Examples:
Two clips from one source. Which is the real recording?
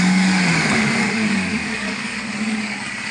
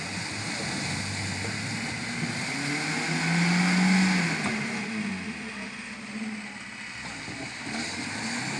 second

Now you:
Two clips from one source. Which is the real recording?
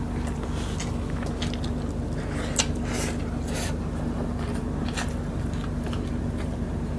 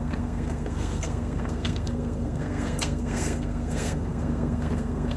first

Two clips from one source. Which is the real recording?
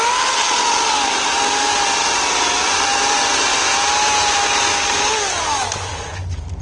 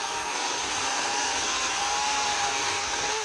first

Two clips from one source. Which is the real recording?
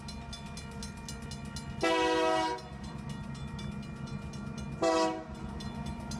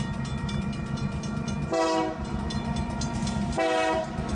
first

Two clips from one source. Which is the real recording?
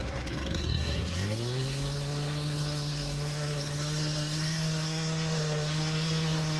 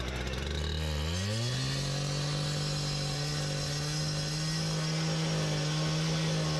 second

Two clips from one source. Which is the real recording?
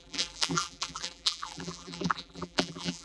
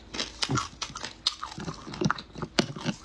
second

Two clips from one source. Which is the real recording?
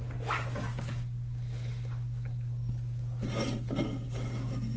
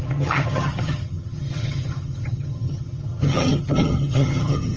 first